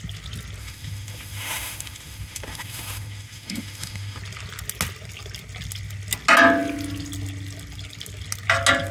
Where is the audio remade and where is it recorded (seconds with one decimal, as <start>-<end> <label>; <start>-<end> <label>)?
0.0-0.6 recorded; 0.6-4.2 remade; 4.2-8.9 recorded